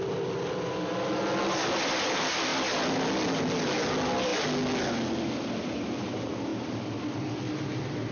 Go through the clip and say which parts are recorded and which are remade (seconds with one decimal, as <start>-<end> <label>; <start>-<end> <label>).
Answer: 0.0-8.1 recorded